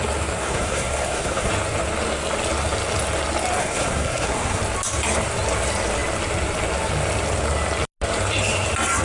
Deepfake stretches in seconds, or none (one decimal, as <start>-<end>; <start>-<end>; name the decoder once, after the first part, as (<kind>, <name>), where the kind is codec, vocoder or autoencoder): 0.4-1.5 (codec, SNAC); 3.6-4.6